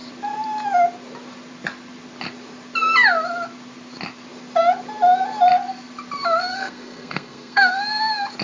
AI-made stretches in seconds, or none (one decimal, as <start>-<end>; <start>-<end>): 6.5-7.7